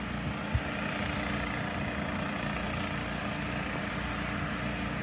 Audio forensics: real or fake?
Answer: real